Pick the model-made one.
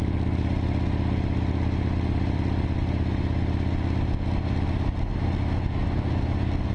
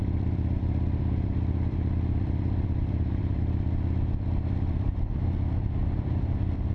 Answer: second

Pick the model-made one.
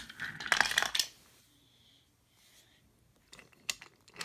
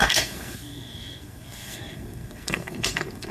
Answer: second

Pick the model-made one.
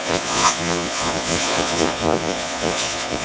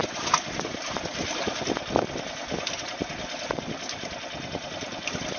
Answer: first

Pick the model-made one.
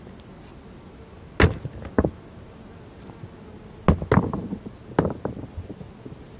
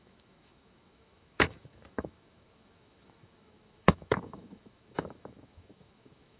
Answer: second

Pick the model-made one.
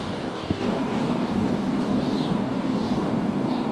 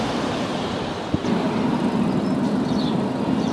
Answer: first